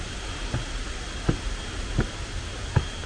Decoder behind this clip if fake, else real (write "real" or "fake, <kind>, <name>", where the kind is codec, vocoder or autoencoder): real